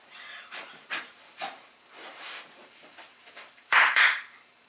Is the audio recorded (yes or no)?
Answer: no